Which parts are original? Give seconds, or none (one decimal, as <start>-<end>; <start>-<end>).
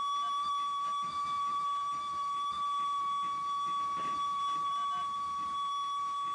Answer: 0.0-6.3